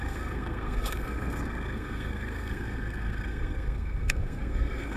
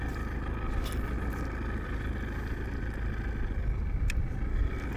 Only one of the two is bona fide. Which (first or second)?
second